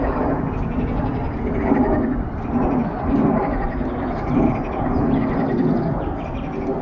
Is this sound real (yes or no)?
yes